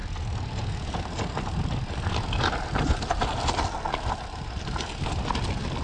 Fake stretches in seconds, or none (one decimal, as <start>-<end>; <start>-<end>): none

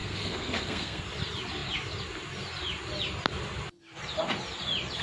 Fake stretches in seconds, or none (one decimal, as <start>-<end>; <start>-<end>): 0.0-1.0